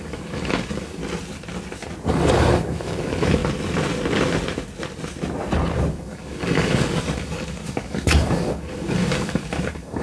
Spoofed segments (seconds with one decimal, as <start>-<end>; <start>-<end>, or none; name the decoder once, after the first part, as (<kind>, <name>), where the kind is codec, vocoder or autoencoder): 0.0-1.0 (codec, DAC); 2.1-3.4; 5.9-10.0